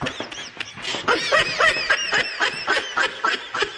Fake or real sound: real